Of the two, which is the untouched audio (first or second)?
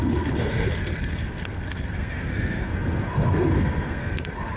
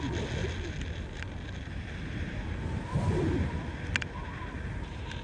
second